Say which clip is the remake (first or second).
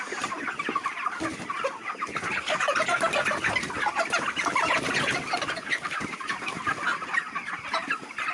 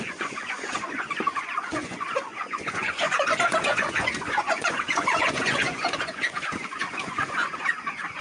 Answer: second